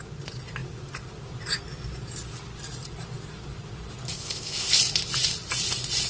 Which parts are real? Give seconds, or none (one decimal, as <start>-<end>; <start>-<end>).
0.0-4.1; 4.7-6.1